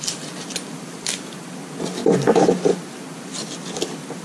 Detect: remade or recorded recorded